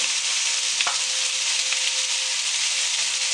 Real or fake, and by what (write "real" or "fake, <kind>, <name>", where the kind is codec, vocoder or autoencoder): real